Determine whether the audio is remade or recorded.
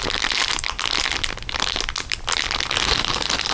recorded